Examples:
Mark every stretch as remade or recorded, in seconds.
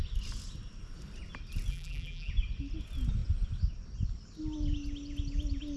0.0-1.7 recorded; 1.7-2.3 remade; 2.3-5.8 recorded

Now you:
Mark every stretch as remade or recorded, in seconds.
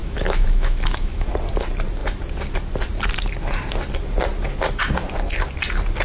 0.0-1.3 remade; 1.3-6.0 recorded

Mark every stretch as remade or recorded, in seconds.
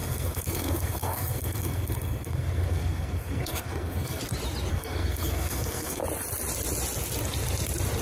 0.0-4.2 remade; 4.2-4.7 recorded; 4.7-6.0 remade; 6.0-8.0 recorded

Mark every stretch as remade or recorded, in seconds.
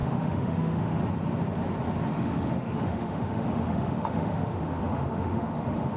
0.0-1.0 remade; 1.0-2.1 recorded; 2.1-6.0 remade